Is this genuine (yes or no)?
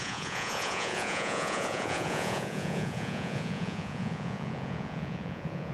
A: no